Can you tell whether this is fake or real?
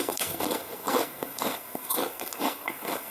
fake